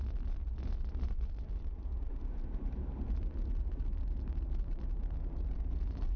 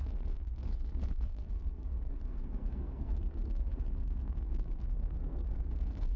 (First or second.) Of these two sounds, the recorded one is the first